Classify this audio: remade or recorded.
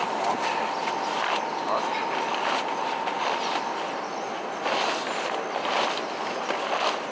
recorded